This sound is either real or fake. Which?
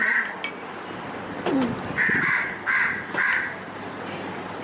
real